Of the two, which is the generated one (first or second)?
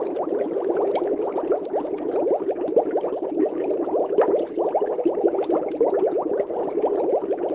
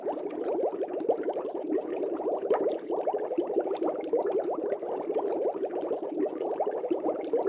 second